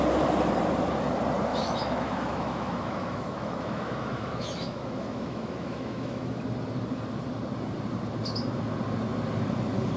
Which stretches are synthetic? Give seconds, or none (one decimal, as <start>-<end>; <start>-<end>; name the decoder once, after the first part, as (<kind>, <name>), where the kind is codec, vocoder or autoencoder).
1.5-6.4 (autoencoder, DAC-VAE)